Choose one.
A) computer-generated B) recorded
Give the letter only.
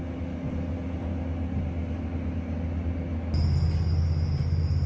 B